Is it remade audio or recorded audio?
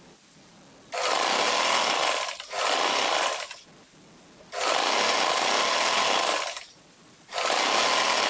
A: recorded